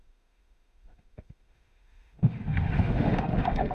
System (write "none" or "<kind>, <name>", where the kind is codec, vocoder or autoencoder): autoencoder, DAC-VAE